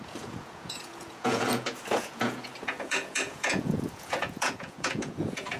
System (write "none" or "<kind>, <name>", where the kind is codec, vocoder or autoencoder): vocoder, Vocos